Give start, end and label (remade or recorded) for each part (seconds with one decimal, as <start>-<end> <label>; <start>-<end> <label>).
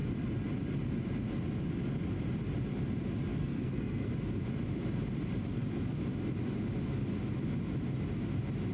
0.0-3.4 recorded; 3.4-4.1 remade; 4.1-8.7 recorded